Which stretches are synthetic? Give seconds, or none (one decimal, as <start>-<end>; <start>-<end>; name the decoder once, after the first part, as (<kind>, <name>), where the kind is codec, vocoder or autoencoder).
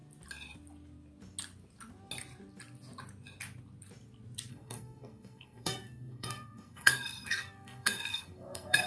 4.5-8.9 (codec, SNAC)